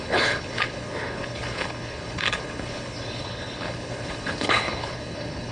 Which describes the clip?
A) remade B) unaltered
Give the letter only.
A